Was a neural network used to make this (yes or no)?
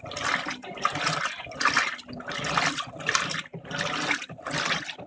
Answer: no